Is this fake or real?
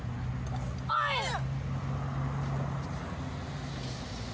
real